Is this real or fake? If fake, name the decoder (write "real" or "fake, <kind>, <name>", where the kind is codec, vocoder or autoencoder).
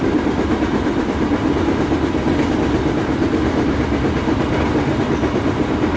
real